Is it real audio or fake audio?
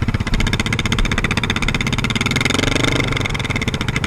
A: real